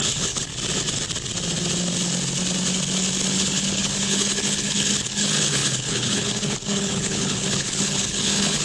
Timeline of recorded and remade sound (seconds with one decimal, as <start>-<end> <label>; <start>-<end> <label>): 0.0-0.5 remade; 0.5-3.3 recorded; 3.3-8.6 remade